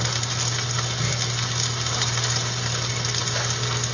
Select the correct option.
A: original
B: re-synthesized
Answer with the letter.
A